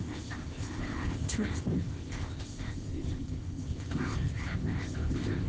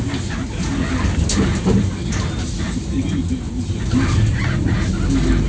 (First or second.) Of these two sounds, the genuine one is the second